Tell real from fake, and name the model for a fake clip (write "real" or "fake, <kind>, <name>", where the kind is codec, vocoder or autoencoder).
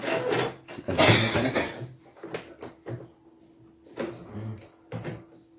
real